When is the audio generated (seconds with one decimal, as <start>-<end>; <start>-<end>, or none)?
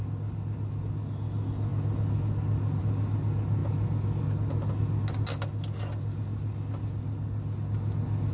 none